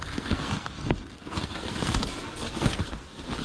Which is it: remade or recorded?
remade